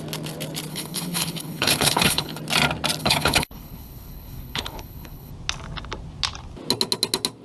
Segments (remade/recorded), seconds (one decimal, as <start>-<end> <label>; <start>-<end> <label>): 0.0-0.7 recorded; 0.7-2.4 remade; 2.4-3.0 recorded; 3.0-5.3 remade; 5.3-7.4 recorded